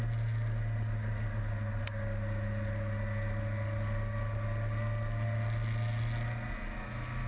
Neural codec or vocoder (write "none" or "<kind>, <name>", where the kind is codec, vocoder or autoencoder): none